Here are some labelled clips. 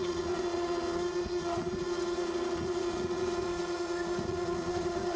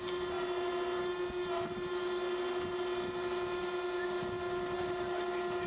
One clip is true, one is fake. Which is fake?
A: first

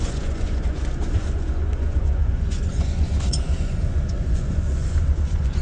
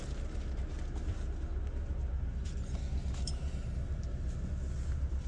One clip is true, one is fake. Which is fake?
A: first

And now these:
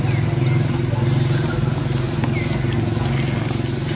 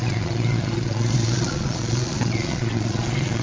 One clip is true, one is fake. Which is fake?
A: second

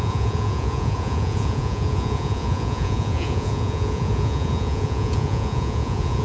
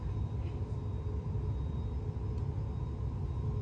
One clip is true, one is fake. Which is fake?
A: first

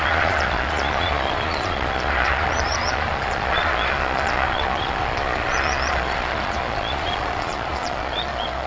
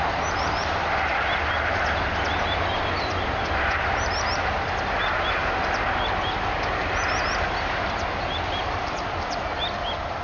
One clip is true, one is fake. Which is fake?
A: first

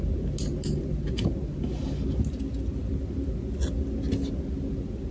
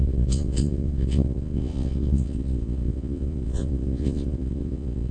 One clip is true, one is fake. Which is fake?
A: second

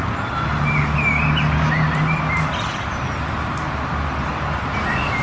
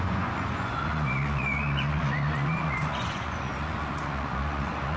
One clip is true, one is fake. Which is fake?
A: second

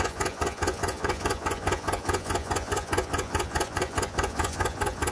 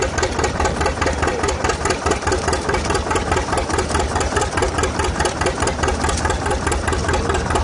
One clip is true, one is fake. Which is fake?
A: first